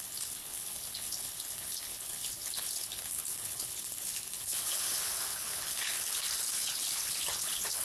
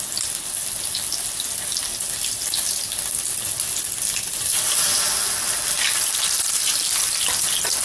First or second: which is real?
second